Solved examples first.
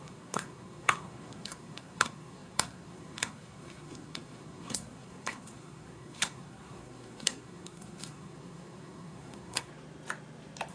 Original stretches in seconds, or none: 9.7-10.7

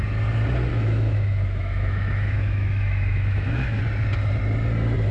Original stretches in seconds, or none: 0.0-0.7; 3.8-5.1

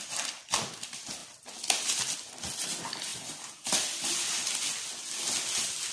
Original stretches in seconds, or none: 0.0-5.9

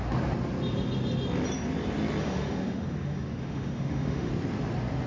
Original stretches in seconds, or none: 0.0-2.2; 4.3-5.1

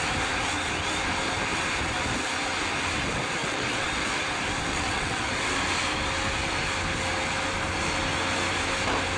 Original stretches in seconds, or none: 0.0-3.4; 3.9-4.7; 5.3-9.2